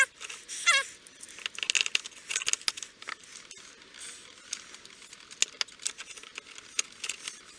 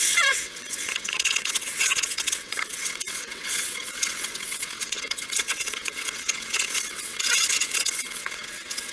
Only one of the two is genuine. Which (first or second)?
first